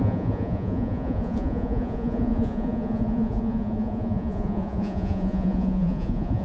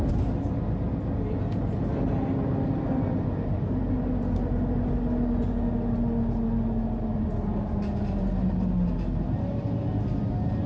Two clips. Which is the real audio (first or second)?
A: second